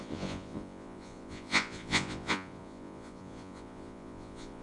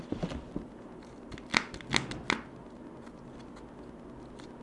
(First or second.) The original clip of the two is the second